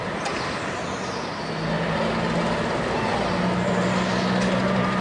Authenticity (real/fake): real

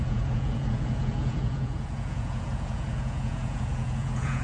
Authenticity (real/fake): fake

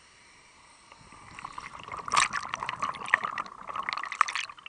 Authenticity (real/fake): real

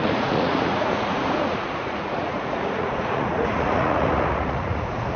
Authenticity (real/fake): fake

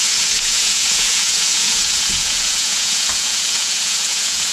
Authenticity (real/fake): fake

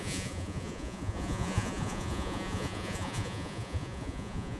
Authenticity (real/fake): fake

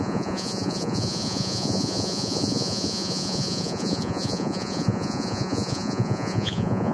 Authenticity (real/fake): fake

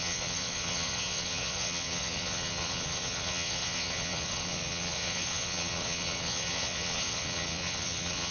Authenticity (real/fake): fake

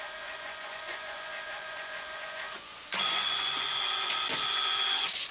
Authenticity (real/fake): fake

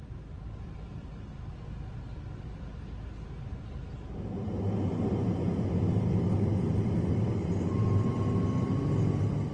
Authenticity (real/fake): real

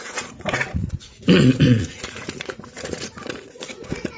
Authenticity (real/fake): fake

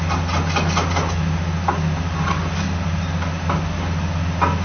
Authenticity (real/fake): real